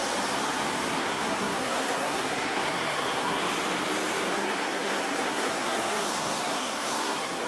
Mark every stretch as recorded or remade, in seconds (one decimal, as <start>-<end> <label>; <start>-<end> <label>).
0.0-1.0 recorded; 1.0-3.4 remade; 3.4-4.3 recorded; 4.3-7.5 remade

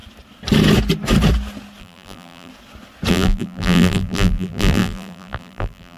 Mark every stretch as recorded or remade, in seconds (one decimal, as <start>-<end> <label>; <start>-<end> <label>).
0.0-1.8 recorded; 1.8-2.5 remade; 2.5-3.1 recorded; 3.1-6.0 remade

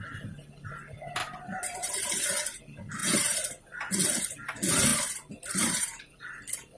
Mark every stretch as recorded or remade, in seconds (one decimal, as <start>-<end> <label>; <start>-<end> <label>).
0.0-1.2 recorded; 1.2-2.6 remade; 2.6-3.0 recorded; 3.0-3.9 remade; 3.9-4.9 recorded; 4.9-6.0 remade; 6.0-6.8 recorded

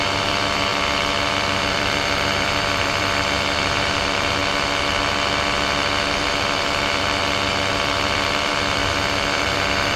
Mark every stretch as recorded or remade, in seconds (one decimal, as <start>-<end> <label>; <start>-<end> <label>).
0.0-0.7 remade; 0.7-1.3 recorded; 1.3-4.4 remade; 4.4-6.2 recorded; 6.2-7.2 remade; 7.2-7.7 recorded; 7.7-10.0 remade

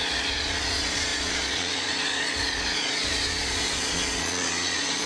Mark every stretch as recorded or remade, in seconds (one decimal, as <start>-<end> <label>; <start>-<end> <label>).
0.0-5.1 remade

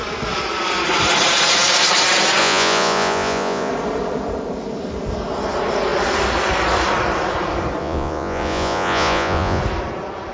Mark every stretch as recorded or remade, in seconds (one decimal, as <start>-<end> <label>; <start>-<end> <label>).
0.0-2.4 recorded; 2.4-3.7 remade; 3.7-7.8 recorded; 7.8-9.6 remade; 9.6-10.3 recorded

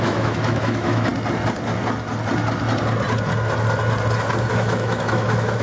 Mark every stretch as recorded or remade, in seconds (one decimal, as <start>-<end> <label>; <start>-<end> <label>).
0.0-1.1 remade; 1.1-4.5 recorded; 4.5-5.6 remade

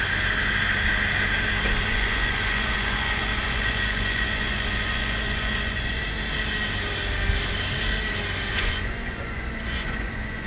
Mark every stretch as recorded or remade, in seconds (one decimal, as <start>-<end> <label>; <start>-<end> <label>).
0.0-1.9 recorded; 1.9-6.0 remade; 6.0-8.5 recorded; 8.5-10.5 remade